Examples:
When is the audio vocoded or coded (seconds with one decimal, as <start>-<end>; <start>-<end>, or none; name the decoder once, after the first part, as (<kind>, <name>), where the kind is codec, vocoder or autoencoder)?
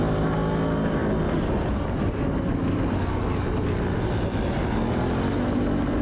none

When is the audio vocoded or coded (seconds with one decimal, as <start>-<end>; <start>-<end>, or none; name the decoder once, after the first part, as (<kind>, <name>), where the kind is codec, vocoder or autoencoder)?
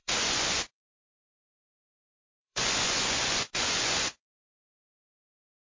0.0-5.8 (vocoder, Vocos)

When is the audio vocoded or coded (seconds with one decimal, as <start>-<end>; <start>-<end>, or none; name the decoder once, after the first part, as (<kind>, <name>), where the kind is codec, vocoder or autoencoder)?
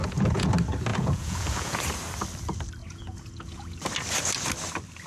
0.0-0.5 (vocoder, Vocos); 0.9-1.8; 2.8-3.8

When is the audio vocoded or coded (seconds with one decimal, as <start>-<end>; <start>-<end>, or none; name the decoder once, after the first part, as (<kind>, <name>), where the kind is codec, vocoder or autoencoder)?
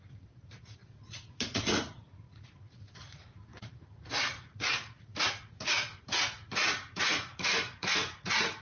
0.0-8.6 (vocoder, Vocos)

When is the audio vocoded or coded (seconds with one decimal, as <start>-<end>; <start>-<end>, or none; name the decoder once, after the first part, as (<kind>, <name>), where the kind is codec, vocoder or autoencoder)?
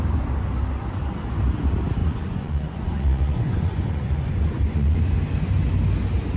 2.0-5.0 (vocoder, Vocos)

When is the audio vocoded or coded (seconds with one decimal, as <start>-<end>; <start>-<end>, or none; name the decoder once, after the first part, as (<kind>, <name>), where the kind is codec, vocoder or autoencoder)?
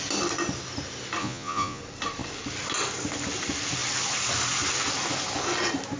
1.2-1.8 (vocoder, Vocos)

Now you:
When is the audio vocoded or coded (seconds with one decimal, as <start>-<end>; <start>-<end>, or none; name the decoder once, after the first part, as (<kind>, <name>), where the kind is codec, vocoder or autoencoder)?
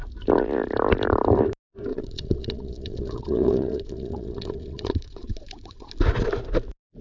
1.9-5.9 (vocoder, Vocos)